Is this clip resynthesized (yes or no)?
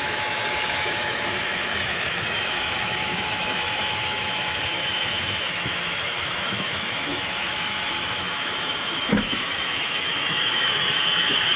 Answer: yes